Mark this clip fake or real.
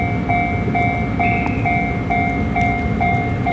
real